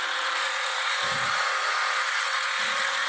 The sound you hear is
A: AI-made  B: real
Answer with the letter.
A